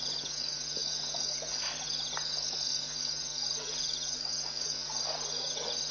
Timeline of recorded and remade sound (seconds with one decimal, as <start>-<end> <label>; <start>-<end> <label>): 0.0-5.9 recorded